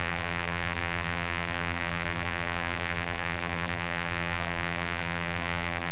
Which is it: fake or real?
fake